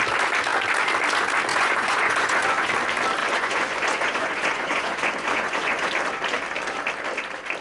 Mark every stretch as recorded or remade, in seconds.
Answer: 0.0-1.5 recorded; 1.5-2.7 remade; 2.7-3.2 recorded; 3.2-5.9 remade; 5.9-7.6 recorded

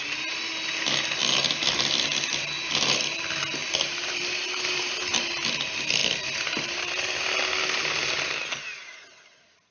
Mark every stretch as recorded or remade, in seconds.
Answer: 0.0-3.6 recorded; 3.6-4.9 remade; 4.9-6.0 recorded; 6.0-8.0 remade; 8.0-9.7 recorded

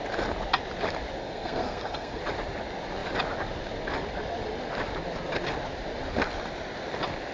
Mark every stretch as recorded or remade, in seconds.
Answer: 0.0-1.2 recorded; 1.2-2.2 remade; 2.2-7.3 recorded